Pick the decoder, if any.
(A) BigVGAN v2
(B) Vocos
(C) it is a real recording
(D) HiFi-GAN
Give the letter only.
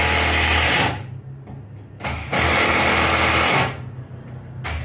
C